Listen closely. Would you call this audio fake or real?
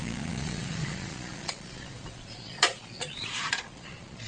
fake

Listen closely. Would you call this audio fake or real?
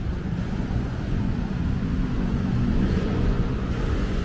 fake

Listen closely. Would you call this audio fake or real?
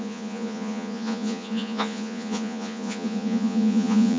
fake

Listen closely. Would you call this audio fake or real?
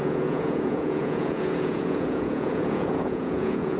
fake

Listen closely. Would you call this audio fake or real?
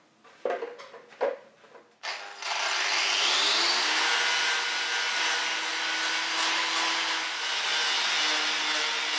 real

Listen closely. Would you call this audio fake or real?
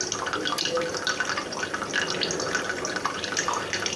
real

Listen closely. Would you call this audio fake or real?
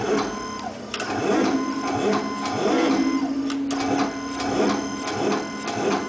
real